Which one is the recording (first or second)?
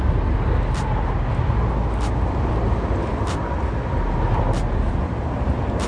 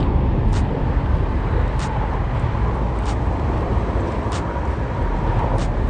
first